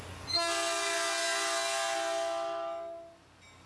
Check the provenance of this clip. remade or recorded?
recorded